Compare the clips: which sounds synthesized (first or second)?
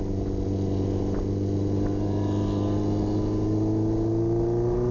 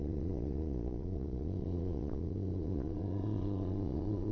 second